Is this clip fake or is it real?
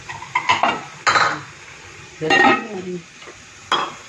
real